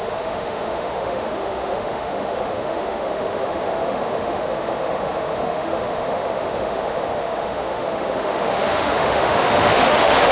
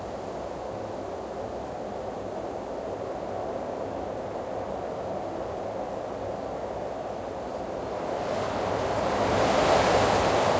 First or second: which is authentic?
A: second